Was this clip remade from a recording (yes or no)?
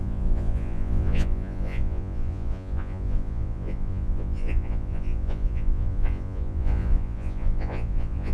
yes